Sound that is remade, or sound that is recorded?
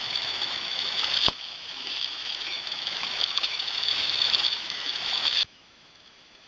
remade